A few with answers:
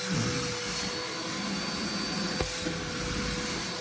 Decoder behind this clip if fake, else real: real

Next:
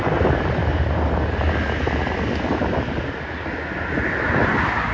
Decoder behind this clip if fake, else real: real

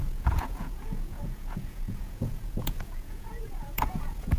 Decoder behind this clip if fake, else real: fake, vocoder, Vocos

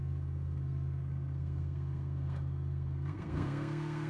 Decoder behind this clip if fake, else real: fake, codec, SNAC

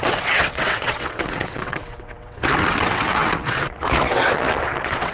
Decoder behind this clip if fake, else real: fake, vocoder, WaveNeXt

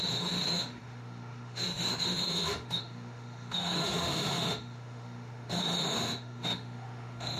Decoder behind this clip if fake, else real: fake, autoencoder, DAC-VAE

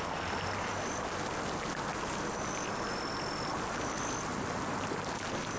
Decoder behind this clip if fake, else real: real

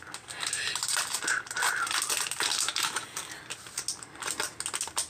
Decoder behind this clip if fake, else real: real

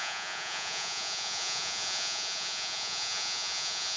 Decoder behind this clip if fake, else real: fake, vocoder, Vocos